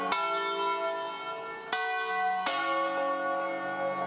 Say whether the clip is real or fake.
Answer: real